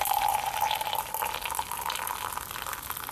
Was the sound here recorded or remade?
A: remade